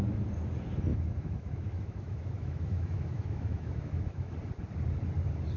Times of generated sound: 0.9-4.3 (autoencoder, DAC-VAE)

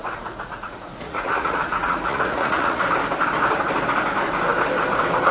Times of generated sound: 0.0-2.8 (vocoder, Vocos)

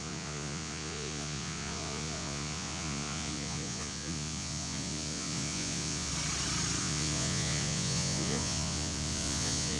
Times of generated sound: 0.0-6.1 (vocoder, Vocos); 6.8-9.8